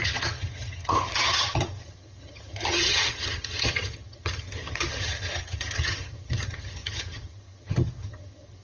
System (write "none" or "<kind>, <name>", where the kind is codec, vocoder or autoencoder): vocoder, HiFi-GAN